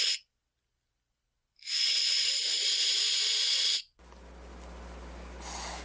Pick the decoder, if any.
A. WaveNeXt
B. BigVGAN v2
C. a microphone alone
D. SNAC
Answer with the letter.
C